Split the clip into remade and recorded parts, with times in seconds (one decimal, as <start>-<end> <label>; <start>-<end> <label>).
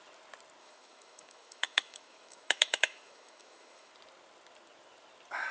0.0-0.6 recorded; 0.6-3.9 remade; 3.9-5.5 recorded